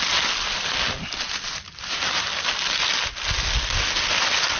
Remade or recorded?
recorded